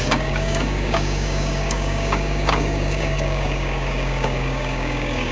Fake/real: fake